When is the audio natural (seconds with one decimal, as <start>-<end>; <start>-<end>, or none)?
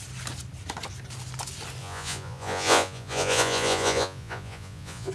0.0-1.8